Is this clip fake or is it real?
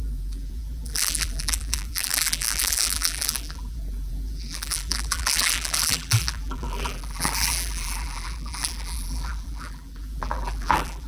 fake